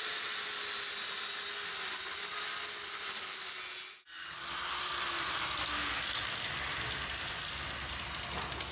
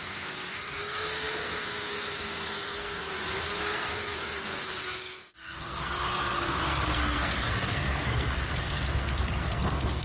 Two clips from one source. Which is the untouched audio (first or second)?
first